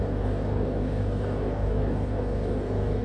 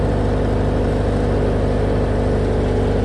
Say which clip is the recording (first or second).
second